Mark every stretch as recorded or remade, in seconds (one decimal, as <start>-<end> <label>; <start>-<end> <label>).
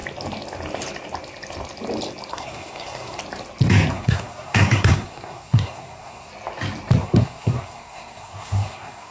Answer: 0.0-2.3 recorded; 2.3-3.2 remade; 3.2-3.9 recorded; 3.9-6.3 remade; 6.3-7.0 recorded; 7.0-9.1 remade